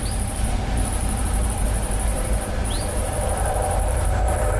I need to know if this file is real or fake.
fake